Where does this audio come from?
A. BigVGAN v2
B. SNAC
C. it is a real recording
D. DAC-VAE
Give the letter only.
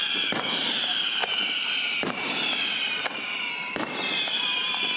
A